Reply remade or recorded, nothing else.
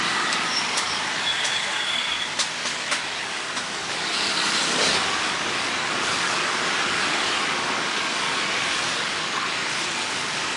remade